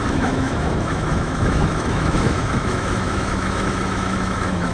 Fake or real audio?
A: fake